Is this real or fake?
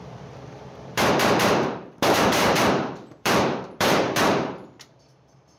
fake